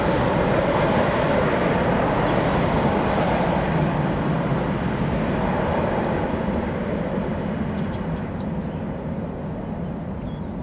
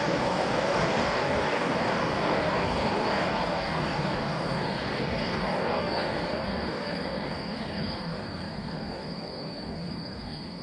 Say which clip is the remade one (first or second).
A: second